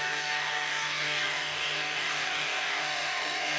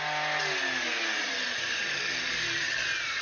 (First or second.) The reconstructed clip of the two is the first